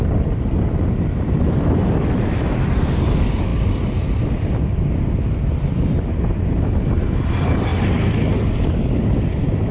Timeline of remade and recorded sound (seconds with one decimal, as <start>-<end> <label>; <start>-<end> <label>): 0.0-9.7 recorded